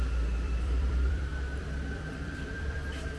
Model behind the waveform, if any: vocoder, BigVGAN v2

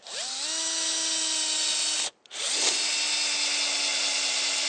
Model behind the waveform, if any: none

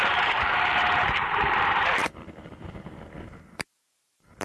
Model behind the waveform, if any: vocoder, BigVGAN v2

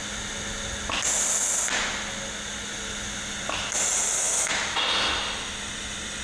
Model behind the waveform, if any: none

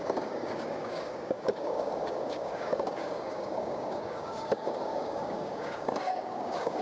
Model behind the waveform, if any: codec, DAC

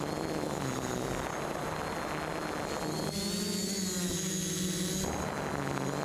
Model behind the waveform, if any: none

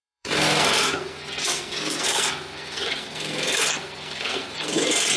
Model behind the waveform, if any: codec, SNAC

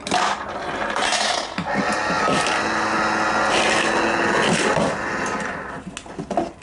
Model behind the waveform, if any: none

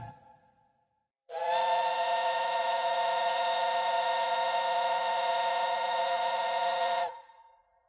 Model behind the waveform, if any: vocoder, Vocos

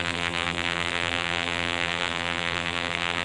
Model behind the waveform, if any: vocoder, BigVGAN v2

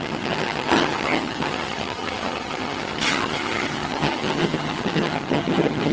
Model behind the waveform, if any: vocoder, HiFi-GAN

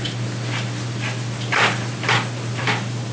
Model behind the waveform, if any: none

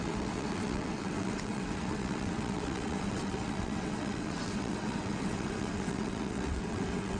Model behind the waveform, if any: vocoder, WaveNeXt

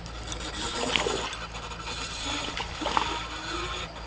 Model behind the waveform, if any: none